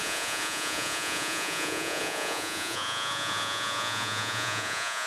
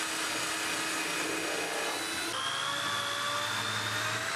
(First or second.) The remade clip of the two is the first